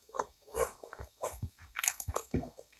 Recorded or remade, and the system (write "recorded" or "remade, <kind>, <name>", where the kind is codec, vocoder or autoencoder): remade, codec, SNAC